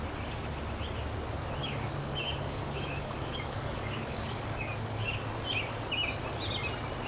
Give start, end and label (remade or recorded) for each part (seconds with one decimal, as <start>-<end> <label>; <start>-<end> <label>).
0.0-1.6 recorded; 1.6-5.1 remade; 5.1-7.1 recorded